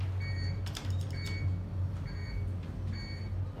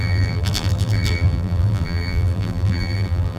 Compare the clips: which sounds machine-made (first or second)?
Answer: second